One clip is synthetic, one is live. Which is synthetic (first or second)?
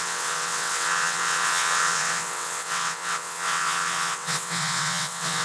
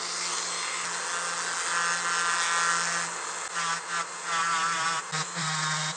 first